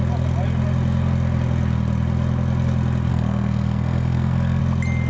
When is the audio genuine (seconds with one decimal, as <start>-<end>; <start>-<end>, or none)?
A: 0.0-3.1; 4.6-5.1